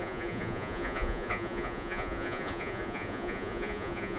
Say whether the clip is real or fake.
fake